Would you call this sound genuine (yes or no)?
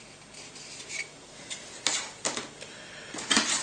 yes